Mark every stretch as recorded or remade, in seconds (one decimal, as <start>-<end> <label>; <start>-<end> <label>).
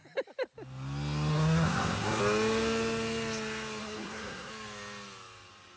0.0-1.3 recorded; 1.3-2.2 remade; 2.2-3.8 recorded; 3.8-4.5 remade; 4.5-5.8 recorded